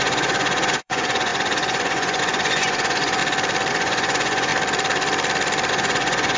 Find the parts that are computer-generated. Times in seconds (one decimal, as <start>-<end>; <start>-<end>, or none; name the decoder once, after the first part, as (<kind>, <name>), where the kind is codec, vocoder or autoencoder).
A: 0.0-3.2 (vocoder, Vocos); 3.7-4.5; 5.7-6.4